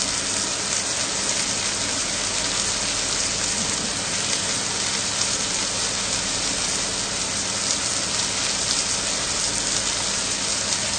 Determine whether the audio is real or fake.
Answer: real